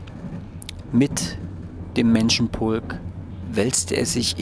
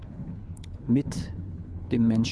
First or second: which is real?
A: first